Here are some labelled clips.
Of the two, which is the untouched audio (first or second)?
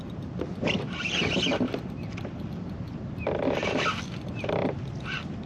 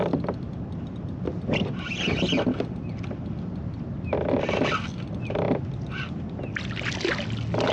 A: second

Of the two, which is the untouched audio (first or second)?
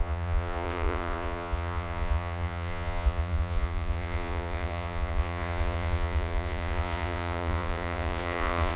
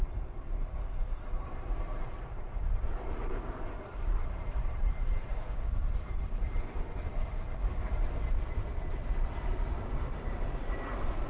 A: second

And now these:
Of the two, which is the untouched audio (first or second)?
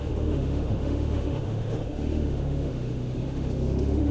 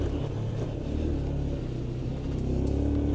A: second